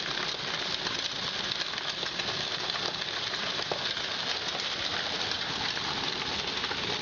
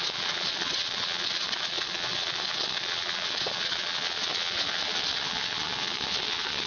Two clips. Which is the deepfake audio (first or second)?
second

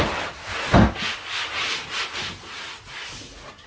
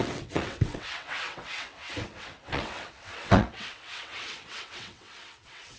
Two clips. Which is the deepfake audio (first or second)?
second